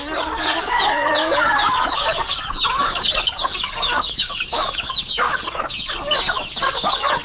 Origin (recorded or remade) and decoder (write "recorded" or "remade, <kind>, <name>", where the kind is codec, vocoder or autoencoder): remade, codec, DAC